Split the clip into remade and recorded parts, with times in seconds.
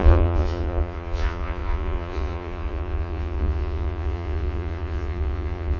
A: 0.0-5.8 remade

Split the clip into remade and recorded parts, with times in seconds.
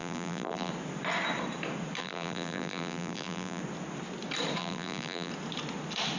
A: 0.0-0.7 remade; 0.7-2.0 recorded; 2.0-3.6 remade; 3.6-4.6 recorded; 4.6-5.3 remade; 5.3-6.2 recorded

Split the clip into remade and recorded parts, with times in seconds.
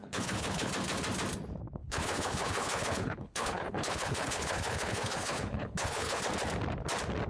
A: 0.0-0.7 remade; 0.7-1.8 recorded; 1.8-6.2 remade; 6.2-7.3 recorded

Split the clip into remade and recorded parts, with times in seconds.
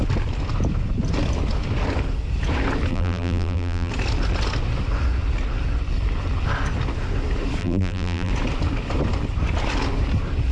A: 0.0-2.9 recorded; 2.9-3.9 remade; 3.9-7.6 recorded; 7.6-8.3 remade; 8.3-10.5 recorded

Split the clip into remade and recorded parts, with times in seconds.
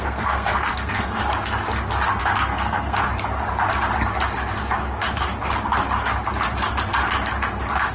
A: 0.0-1.2 remade; 1.2-2.2 recorded; 2.2-3.1 remade; 3.1-7.9 recorded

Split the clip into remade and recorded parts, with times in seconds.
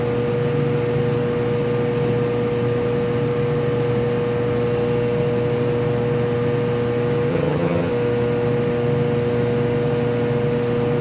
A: 0.0-7.3 recorded; 7.3-7.9 remade; 7.9-11.0 recorded